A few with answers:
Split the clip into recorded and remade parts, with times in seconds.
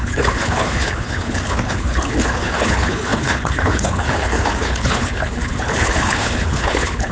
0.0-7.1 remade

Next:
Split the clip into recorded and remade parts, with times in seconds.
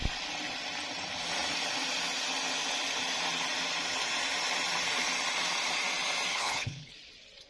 0.0-6.3 recorded; 6.3-6.9 remade; 6.9-7.5 recorded